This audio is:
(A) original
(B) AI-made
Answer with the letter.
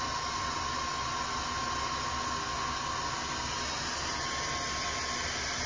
A